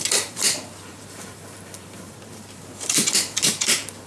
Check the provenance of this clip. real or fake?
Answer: fake